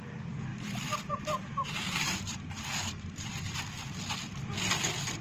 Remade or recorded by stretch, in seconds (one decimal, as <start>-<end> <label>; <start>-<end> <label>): 0.0-0.5 recorded; 0.5-3.6 remade; 3.6-5.2 recorded